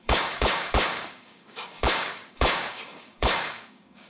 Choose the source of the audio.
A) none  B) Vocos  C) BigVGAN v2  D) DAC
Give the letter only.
D